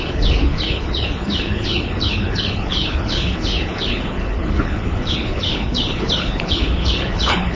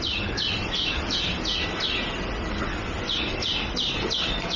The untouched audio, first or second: second